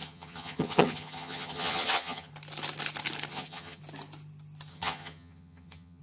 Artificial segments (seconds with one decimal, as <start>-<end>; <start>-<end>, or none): 0.0-2.3; 3.3-3.8; 4.7-6.0